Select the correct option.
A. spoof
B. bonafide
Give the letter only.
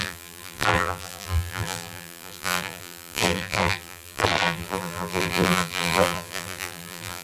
A